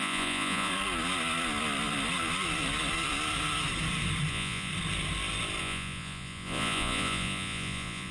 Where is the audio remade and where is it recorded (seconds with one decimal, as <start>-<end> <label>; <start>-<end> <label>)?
0.0-0.7 remade; 0.7-4.3 recorded; 4.3-4.7 remade; 4.7-5.6 recorded; 5.6-8.1 remade

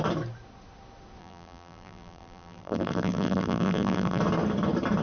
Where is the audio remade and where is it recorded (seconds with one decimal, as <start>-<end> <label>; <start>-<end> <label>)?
0.0-1.2 recorded; 1.2-4.2 remade; 4.2-5.0 recorded

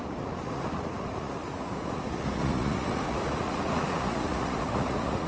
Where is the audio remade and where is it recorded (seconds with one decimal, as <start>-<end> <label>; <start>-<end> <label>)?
0.0-5.3 remade